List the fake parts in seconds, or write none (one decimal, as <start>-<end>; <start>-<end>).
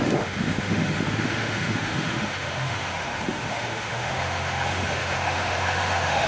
0.0-6.3